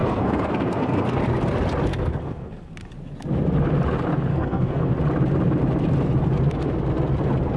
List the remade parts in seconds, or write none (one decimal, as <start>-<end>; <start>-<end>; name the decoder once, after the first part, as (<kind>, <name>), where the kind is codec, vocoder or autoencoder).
0.0-1.2 (codec, SNAC); 1.9-2.7; 4.3-4.9